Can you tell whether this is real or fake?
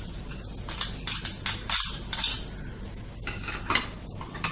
real